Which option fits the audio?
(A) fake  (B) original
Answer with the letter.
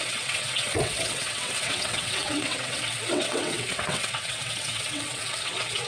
A